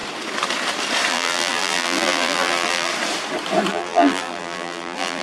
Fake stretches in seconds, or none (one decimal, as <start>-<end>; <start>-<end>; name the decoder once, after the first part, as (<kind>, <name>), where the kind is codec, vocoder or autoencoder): 1.1-2.9 (vocoder, BigVGAN v2); 3.7-5.2